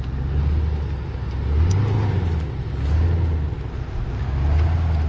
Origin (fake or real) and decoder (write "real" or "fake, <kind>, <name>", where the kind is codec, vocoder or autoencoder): real